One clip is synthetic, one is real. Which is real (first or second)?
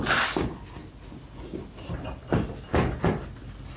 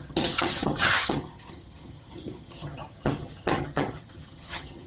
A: first